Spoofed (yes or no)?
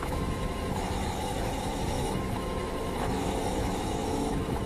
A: yes